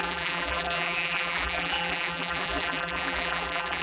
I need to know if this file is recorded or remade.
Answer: remade